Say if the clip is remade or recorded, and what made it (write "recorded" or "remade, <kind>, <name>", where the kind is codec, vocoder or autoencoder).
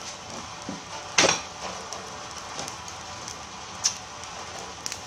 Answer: recorded